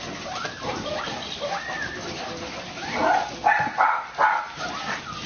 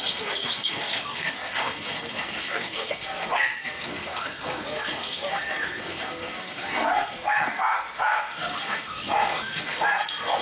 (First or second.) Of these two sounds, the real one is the first